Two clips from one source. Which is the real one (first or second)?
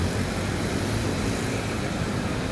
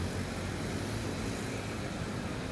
second